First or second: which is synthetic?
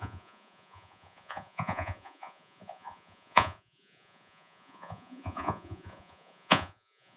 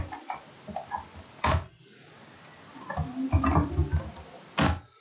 first